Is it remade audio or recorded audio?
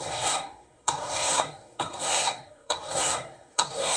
remade